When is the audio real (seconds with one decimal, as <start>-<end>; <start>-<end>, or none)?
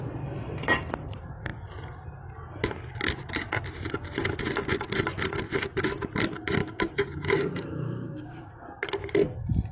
0.0-6.6; 8.5-9.7